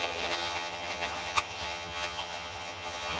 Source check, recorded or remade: remade